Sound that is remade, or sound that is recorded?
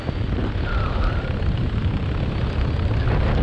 recorded